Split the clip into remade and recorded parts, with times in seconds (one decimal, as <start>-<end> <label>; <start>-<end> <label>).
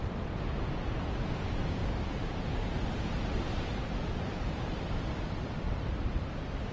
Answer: 0.0-1.8 recorded; 1.8-5.8 remade; 5.8-6.7 recorded